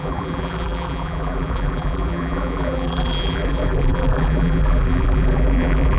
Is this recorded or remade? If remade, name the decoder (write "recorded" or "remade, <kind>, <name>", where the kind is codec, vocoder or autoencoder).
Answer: remade, vocoder, BigVGAN v2